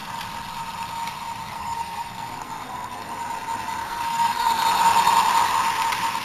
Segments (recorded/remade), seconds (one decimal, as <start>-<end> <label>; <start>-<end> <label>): 0.0-1.5 recorded; 1.5-3.2 remade; 3.2-3.8 recorded; 3.8-4.5 remade; 4.5-6.2 recorded

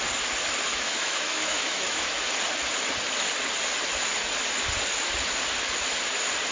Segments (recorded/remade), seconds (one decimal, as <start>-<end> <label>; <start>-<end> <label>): 0.0-0.7 recorded; 0.7-2.2 remade; 2.2-6.5 recorded